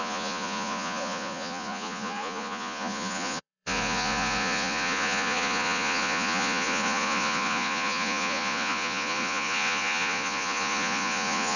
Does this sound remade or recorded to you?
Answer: remade